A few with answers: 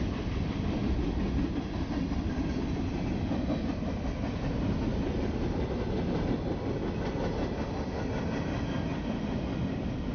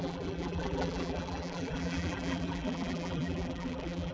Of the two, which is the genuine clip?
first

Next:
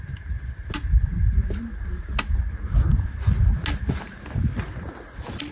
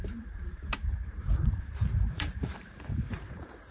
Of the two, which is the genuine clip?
first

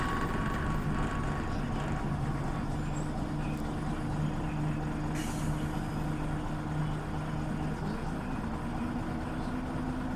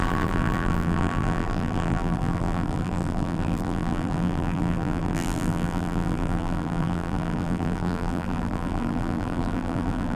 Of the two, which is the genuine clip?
first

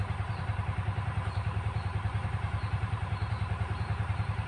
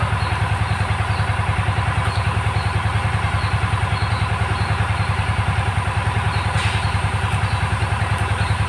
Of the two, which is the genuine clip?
second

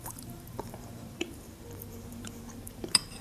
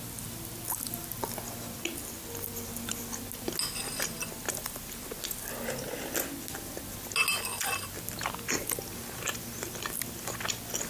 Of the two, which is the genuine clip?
second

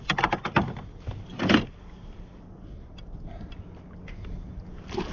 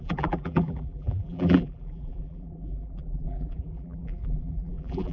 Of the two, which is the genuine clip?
first